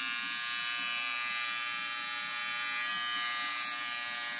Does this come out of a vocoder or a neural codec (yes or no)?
no